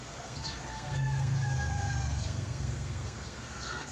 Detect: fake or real fake